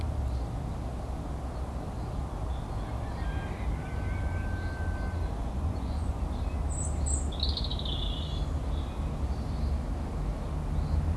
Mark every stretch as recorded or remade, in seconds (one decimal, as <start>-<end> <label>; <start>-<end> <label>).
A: 0.0-5.4 recorded; 5.4-6.2 remade; 6.2-11.2 recorded

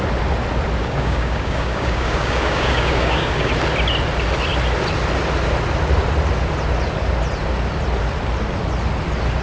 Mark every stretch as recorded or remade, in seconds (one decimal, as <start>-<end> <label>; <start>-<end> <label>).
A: 0.0-0.8 recorded; 0.8-3.5 remade; 3.5-9.4 recorded

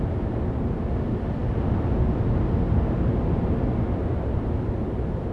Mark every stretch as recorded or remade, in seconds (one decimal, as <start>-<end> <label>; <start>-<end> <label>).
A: 0.0-5.3 recorded

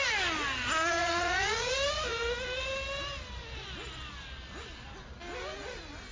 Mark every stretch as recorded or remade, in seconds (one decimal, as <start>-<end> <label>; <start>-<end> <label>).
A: 0.0-1.0 recorded; 1.0-1.7 remade; 1.7-6.1 recorded

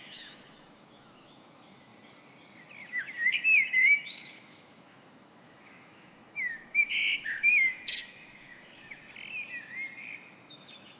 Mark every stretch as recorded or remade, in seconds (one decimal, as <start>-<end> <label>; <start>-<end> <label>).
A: 0.0-1.9 remade; 1.9-2.9 recorded; 2.9-9.0 remade; 9.0-10.5 recorded; 10.5-11.0 remade

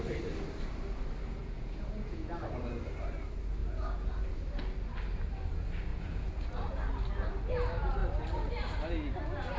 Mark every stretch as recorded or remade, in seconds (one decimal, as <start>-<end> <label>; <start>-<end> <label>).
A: 0.0-1.4 recorded; 1.4-2.3 remade; 2.3-3.6 recorded; 3.6-4.2 remade; 4.2-5.9 recorded; 5.9-6.8 remade; 6.8-9.6 recorded

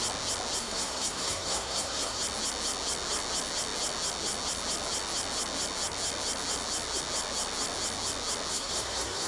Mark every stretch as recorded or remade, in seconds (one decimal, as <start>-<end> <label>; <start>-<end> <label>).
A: 0.0-0.6 recorded; 0.6-2.2 remade; 2.2-8.5 recorded; 8.5-9.3 remade

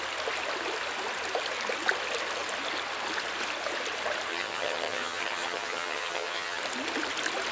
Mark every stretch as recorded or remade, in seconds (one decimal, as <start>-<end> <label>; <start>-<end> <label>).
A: 0.0-4.3 recorded; 4.3-6.6 remade; 6.6-7.5 recorded